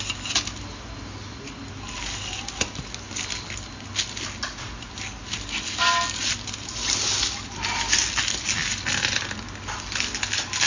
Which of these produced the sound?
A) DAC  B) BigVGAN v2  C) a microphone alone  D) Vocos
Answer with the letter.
C